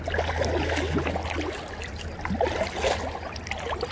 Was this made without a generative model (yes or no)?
yes